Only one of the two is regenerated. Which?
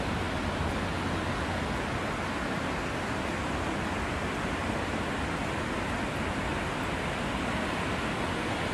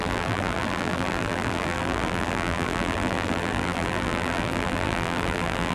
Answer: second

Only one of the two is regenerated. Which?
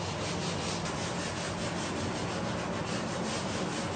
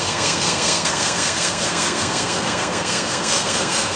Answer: second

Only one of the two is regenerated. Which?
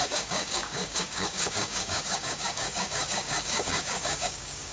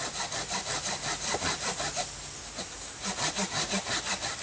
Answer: first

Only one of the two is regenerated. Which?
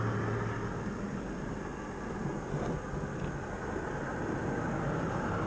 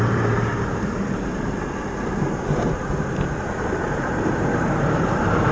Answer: second